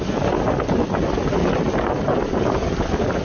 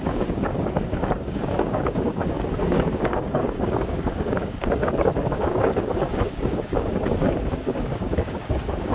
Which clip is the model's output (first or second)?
second